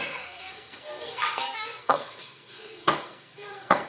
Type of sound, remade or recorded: remade